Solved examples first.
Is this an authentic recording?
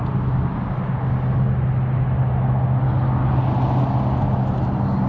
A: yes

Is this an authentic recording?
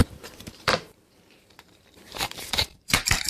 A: no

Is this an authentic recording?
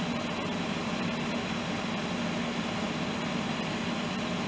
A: yes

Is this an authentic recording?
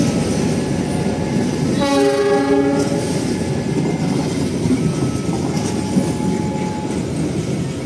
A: yes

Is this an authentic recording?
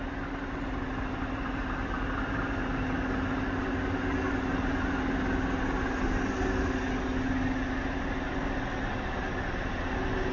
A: yes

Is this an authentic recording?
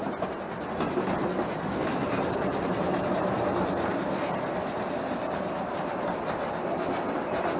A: yes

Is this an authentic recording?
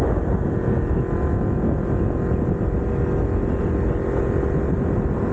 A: yes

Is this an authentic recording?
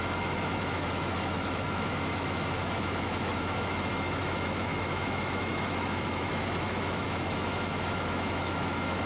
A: no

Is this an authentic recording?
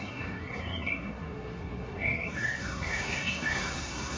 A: no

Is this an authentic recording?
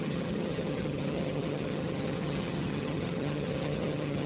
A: no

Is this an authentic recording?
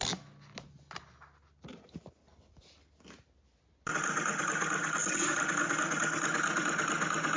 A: yes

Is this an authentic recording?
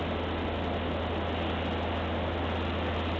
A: yes